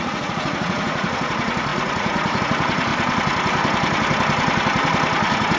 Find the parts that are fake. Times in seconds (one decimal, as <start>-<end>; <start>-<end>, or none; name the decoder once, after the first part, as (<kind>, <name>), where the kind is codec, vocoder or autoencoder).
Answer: 0.0-2.9 (vocoder, Vocos)